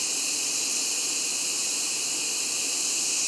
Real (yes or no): yes